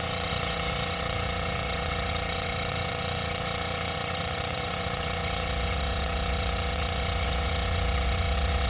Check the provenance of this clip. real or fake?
fake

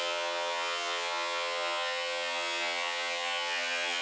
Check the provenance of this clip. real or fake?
fake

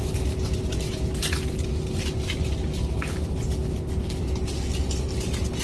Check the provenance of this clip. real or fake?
real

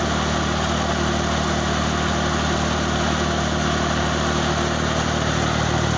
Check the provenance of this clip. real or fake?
real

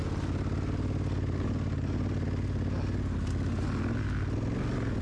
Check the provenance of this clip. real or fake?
real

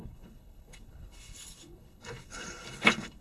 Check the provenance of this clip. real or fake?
fake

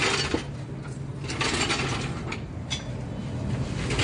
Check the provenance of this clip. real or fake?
real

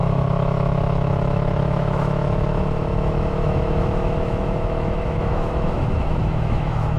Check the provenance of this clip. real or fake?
fake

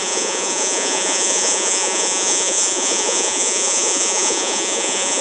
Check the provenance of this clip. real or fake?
fake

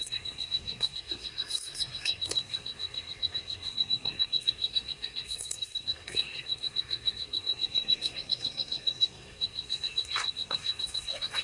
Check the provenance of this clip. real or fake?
fake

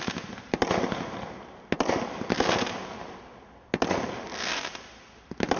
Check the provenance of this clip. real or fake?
real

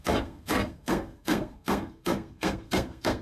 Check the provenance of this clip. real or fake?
fake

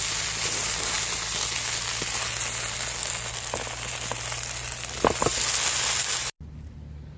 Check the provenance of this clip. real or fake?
real